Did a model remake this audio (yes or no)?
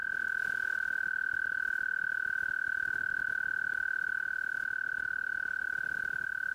yes